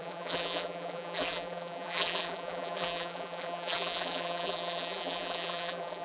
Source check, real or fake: fake